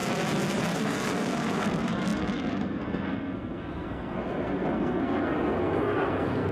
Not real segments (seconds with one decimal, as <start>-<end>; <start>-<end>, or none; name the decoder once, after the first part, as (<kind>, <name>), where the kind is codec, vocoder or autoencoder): 0.6-6.5 (codec, SNAC)